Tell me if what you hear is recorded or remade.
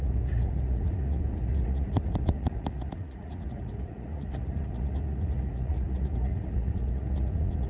remade